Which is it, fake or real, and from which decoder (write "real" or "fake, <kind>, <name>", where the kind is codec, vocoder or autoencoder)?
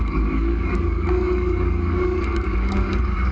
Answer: fake, codec, DAC